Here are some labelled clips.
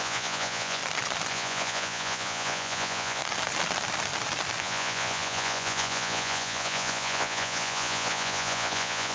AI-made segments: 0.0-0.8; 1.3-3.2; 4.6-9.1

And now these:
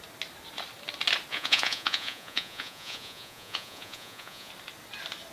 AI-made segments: 1.3-4.5

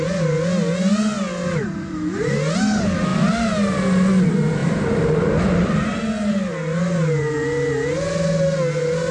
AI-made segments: 4.6-5.4

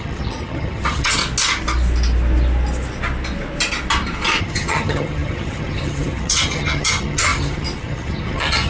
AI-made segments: 0.0-1.2; 4.4-8.7